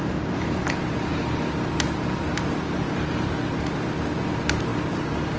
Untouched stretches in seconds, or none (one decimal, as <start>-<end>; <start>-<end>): 0.0-5.4